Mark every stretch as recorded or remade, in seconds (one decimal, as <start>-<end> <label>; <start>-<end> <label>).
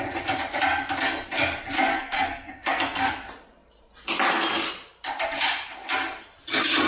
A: 0.0-1.9 recorded; 1.9-3.1 remade; 3.1-6.9 recorded